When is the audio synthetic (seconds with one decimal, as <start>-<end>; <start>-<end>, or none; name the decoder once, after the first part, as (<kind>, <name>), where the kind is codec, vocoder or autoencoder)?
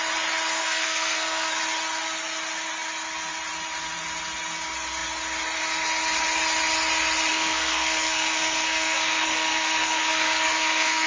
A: 0.6-1.5 (codec, SNAC); 7.3-11.1